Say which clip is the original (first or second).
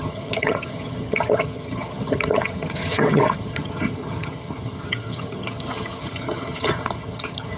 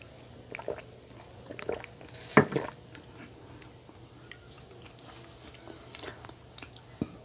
second